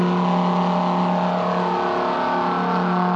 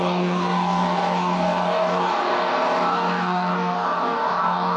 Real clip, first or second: first